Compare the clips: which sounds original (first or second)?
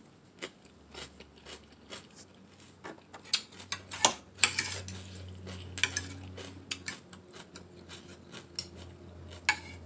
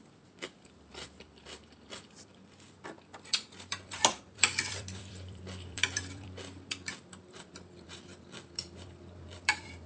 first